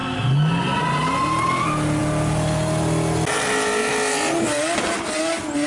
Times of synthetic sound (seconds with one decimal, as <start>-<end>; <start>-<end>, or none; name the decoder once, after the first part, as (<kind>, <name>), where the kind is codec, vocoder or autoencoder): none